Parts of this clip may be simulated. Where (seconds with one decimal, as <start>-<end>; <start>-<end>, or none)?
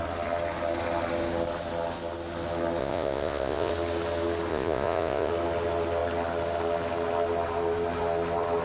2.8-3.7; 4.5-5.3